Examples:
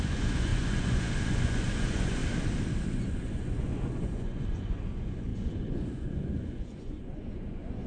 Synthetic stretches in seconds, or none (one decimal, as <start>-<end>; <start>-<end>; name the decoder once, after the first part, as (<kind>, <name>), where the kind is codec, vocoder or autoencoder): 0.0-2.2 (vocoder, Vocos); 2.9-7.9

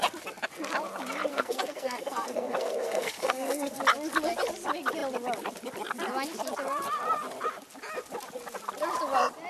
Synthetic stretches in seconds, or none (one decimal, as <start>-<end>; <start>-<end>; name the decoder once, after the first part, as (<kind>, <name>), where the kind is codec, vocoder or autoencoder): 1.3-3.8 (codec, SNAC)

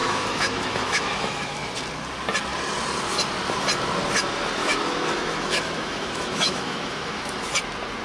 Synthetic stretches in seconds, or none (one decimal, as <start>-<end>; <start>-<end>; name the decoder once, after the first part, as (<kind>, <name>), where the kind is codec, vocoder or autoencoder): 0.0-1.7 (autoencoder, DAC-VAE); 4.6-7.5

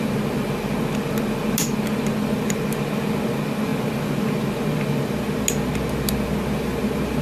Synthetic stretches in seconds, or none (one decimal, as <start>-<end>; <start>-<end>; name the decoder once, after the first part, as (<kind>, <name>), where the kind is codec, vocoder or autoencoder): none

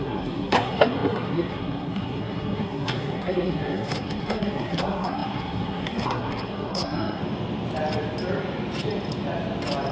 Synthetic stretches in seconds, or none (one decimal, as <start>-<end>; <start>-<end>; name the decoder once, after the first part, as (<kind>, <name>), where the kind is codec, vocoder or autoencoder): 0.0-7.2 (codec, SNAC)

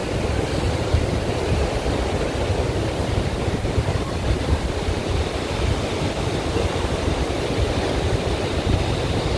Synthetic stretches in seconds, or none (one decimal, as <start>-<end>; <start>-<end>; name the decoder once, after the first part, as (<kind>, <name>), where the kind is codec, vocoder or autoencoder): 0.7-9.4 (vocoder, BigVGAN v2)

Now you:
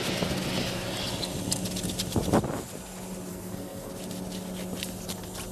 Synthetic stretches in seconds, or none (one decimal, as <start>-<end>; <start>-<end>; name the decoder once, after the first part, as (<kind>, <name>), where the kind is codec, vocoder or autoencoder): 3.3-3.9 (codec, SNAC)